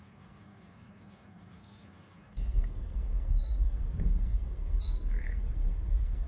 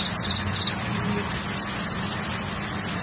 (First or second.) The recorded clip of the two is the second